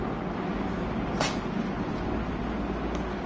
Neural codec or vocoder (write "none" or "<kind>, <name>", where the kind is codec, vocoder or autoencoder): none